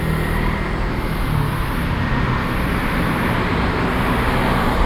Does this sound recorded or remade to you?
recorded